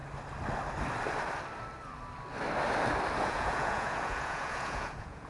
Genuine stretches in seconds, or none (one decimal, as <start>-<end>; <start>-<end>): 0.0-3.2